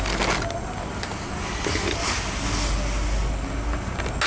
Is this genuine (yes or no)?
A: yes